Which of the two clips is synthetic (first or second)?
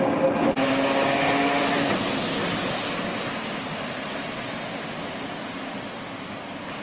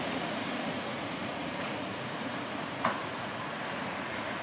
second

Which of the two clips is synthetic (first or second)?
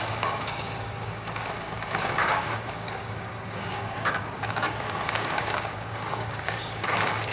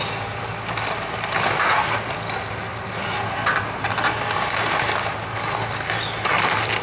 first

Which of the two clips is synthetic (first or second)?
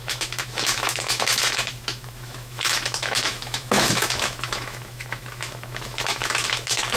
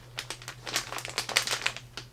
first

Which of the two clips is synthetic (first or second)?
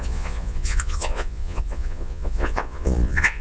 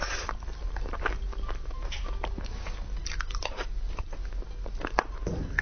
first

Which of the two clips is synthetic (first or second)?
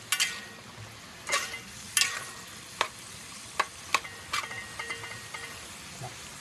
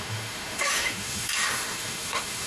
second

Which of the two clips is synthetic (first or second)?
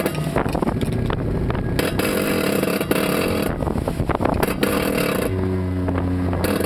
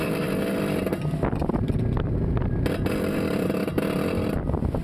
second